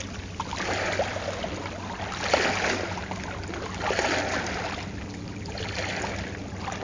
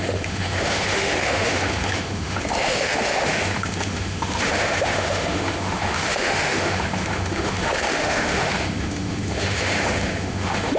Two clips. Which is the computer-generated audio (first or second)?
second